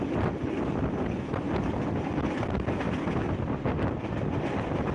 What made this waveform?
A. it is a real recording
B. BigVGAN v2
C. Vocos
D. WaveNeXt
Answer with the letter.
A